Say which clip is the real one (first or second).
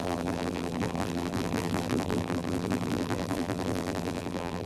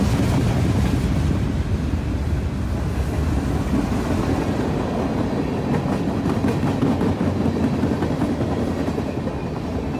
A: second